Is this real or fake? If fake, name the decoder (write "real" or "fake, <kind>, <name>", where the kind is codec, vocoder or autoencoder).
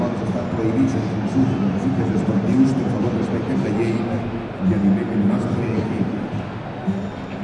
real